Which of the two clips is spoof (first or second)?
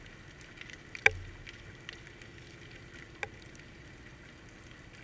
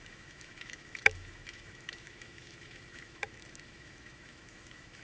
second